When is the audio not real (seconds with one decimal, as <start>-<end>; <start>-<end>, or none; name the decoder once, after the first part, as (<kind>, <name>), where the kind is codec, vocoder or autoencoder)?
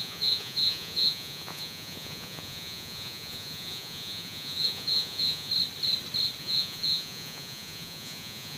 0.0-5.5 (vocoder, Vocos); 6.4-8.6